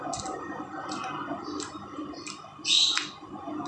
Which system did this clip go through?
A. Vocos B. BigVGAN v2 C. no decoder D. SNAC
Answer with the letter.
C